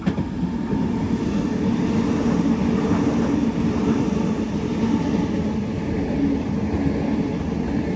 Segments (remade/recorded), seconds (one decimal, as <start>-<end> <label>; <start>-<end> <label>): 0.0-8.0 recorded